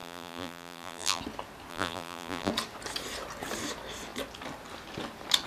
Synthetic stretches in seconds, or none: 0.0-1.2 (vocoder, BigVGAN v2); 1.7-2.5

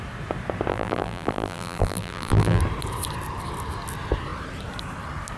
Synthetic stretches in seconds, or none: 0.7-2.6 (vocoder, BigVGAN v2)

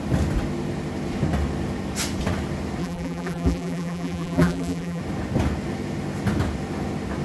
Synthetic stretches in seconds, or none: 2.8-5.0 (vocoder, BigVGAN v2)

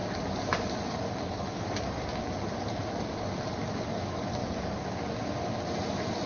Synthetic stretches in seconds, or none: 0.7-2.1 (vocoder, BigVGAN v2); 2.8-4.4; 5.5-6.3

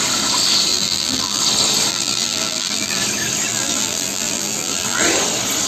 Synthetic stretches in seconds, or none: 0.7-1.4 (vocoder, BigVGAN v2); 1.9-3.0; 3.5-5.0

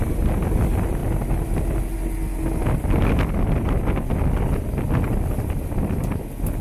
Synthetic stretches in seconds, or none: none